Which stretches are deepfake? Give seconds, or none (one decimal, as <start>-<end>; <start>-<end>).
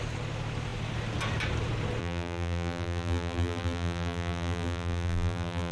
2.0-5.7